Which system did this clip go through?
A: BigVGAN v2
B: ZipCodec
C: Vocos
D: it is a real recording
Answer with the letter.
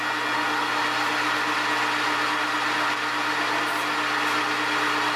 D